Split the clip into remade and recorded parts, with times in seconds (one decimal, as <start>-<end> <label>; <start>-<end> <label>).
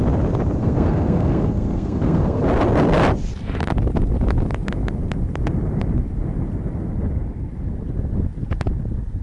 0.0-0.6 recorded; 0.6-2.4 remade; 2.4-9.2 recorded